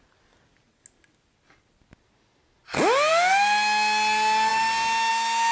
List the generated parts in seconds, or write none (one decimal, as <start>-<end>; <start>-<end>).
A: none